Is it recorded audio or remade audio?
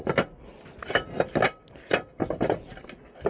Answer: recorded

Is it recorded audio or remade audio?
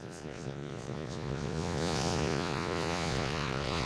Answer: remade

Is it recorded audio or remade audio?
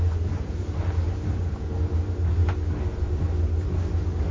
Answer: recorded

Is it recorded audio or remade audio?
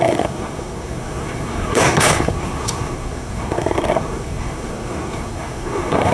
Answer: remade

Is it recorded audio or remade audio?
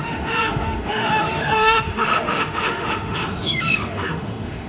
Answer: remade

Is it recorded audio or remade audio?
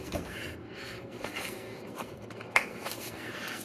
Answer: remade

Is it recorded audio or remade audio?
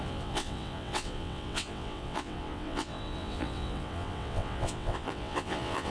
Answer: remade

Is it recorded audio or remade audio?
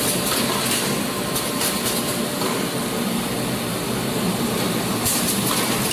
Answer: recorded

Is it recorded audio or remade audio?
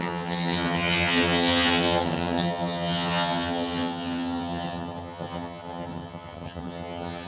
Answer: remade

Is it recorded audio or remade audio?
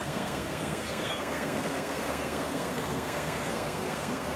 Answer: remade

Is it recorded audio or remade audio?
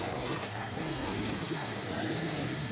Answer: remade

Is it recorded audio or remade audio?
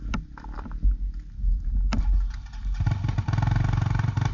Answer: recorded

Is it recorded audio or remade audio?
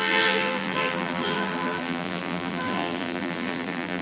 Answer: remade